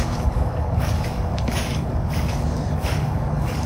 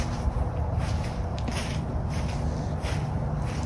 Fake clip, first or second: first